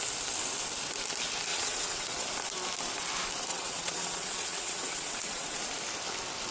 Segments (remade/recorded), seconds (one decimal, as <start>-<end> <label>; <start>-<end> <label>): 0.0-1.5 recorded; 1.5-2.2 remade; 2.2-3.5 recorded; 3.5-5.6 remade; 5.6-6.5 recorded